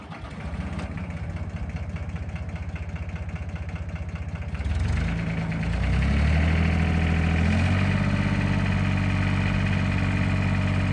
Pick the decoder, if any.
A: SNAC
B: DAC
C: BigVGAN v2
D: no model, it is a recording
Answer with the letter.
D